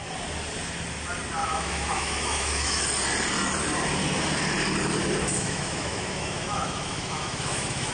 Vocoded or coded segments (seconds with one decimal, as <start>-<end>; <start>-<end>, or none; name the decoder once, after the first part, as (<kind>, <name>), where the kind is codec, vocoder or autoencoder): 1.4-2.8 (autoencoder, DAC-VAE); 5.3-7.9